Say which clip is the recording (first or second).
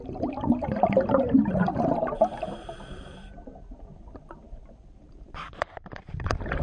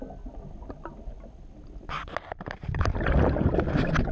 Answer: second